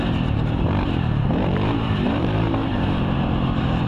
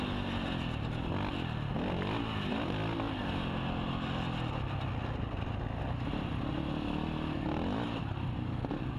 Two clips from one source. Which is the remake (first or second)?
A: first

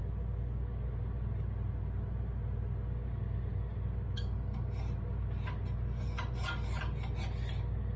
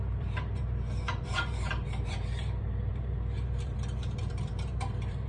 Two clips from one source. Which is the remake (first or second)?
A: second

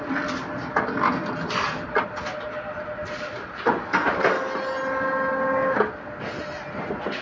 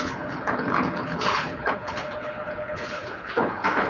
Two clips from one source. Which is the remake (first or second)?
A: second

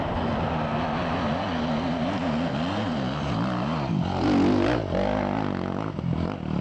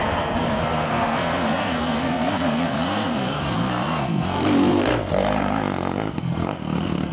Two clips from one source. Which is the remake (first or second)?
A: second